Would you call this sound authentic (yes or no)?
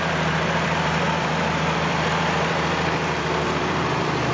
no